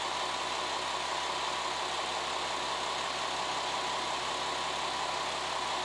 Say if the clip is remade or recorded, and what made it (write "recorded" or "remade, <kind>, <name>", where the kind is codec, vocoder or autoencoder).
recorded